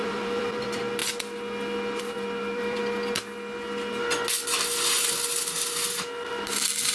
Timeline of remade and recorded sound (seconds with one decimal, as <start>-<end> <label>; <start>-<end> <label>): 0.0-1.0 remade; 1.0-2.0 recorded; 2.0-2.8 remade; 2.8-6.3 recorded; 6.3-6.9 remade

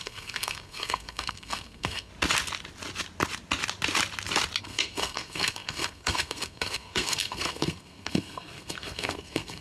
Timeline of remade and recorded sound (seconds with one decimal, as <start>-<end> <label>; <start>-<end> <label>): 0.0-2.1 remade; 2.1-4.6 recorded; 4.6-9.6 remade

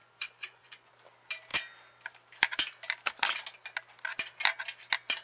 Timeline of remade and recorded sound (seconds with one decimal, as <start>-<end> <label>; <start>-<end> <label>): 0.0-0.9 remade; 0.9-5.2 recorded